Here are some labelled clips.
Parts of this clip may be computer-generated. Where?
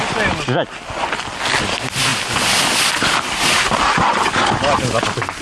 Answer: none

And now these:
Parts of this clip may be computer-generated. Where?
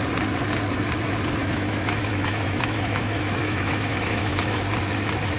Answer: 1.4-4.6 (autoencoder, DAC-VAE)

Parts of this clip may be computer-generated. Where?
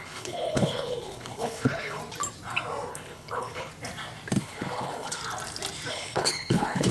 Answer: 0.0-2.0 (codec, HILCodec); 2.9-3.7; 4.4-5.2; 5.9-6.9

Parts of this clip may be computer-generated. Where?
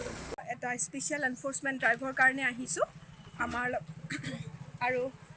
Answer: none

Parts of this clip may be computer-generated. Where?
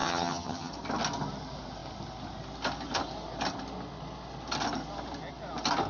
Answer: 0.0-0.7 (vocoder, HiFi-GAN)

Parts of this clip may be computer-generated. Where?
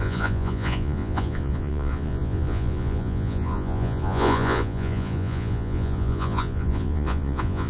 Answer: 0.0-7.7 (vocoder, Vocos)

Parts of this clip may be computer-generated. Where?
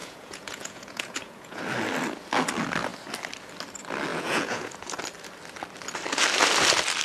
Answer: 0.0-1.6 (vocoder, Vocos); 4.1-4.7